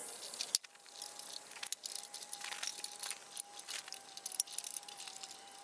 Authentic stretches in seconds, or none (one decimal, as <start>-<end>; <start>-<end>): 0.0-5.6